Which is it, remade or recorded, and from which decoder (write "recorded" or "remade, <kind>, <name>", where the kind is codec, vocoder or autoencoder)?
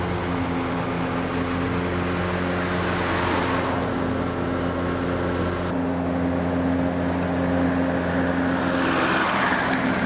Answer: recorded